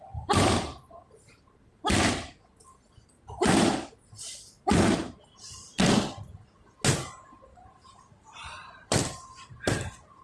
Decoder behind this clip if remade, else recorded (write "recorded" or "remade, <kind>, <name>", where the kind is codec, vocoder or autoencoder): remade, vocoder, BigVGAN v2